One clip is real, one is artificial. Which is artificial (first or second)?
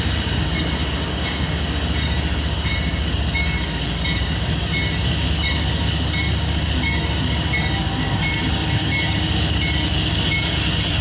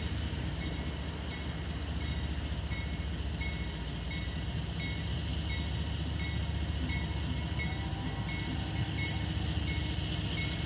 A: first